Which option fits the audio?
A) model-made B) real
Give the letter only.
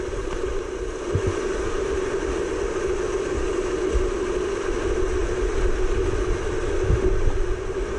B